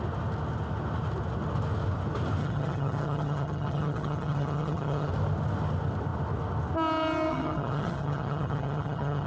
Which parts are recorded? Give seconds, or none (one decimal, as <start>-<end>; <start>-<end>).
0.0-2.4; 5.1-7.3